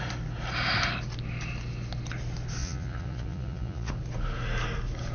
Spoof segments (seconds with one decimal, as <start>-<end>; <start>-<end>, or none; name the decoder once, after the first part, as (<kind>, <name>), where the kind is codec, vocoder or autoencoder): 2.6-3.9 (vocoder, Vocos)